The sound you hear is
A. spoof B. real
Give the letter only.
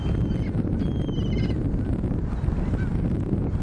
B